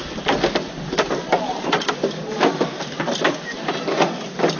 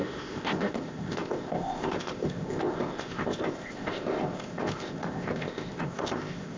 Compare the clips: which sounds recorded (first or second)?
first